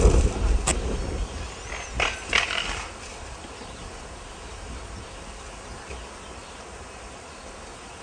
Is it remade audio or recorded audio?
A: recorded